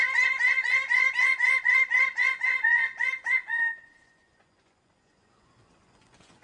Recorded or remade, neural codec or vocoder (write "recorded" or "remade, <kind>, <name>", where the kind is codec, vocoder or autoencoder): remade, vocoder, Vocos